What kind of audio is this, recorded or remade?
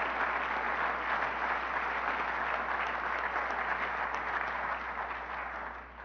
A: recorded